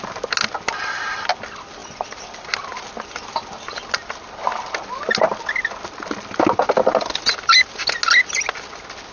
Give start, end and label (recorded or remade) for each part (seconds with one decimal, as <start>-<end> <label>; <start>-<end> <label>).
0.0-9.1 recorded